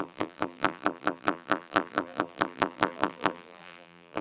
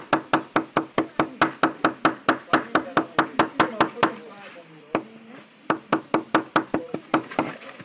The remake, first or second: first